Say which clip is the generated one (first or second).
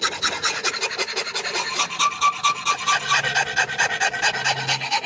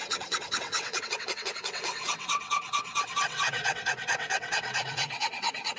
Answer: second